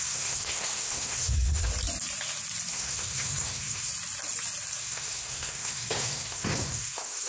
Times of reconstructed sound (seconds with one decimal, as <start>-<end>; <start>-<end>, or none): 0.0-1.7; 2.7-3.9; 4.8-7.3